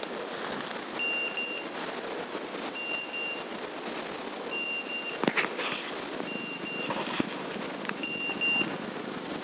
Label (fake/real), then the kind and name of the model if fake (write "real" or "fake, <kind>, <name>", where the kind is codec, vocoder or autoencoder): real